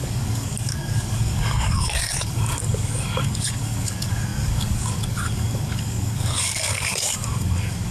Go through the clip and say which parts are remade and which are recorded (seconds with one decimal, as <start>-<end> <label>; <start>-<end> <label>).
0.0-7.9 remade